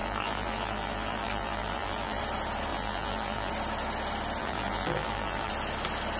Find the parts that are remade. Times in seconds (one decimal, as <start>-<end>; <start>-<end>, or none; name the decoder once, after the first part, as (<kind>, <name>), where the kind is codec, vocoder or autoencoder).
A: 0.0-2.2 (vocoder, BigVGAN v2); 2.7-3.5; 4.4-5.5